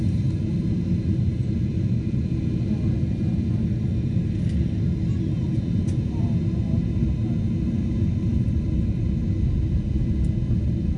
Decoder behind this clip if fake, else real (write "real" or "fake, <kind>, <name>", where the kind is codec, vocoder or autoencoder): real